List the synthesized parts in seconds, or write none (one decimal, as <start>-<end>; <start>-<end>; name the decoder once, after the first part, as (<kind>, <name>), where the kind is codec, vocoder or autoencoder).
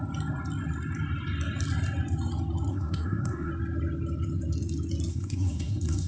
2.7-3.5 (codec, SNAC); 5.1-6.1